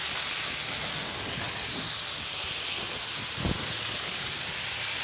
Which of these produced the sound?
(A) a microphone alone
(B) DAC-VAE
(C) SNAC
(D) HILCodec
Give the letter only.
A